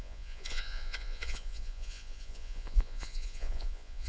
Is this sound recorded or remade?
remade